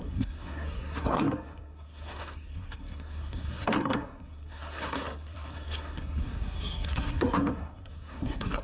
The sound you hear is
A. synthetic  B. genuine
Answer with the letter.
A